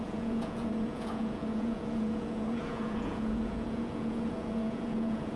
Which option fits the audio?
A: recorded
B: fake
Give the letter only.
B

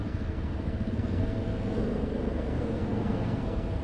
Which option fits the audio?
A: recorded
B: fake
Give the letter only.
B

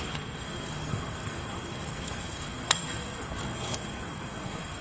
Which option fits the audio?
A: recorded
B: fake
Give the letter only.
B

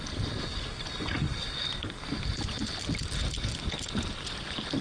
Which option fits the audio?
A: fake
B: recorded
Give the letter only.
B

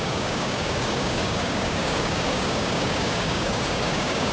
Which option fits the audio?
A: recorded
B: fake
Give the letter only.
B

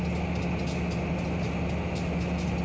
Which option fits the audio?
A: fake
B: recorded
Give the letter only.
B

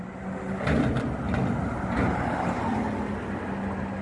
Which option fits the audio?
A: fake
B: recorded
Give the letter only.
B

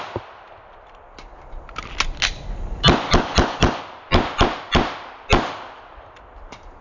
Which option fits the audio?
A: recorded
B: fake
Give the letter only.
A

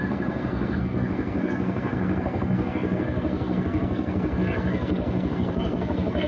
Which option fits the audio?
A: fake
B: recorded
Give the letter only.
A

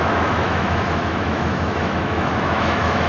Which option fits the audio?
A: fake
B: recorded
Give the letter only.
A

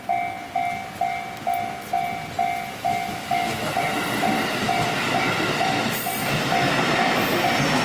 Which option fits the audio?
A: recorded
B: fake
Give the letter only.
A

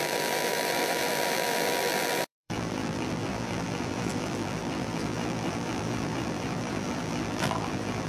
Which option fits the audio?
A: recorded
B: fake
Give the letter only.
B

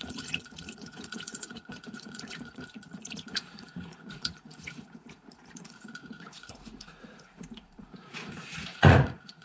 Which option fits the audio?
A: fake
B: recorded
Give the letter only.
A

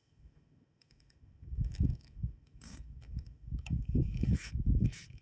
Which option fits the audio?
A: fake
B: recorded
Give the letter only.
A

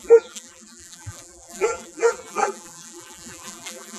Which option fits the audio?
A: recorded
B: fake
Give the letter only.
B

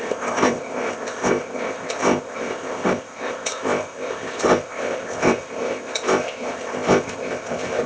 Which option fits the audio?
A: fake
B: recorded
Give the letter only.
A